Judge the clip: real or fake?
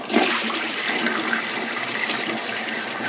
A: fake